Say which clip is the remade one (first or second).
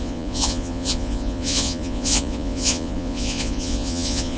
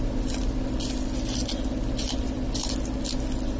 first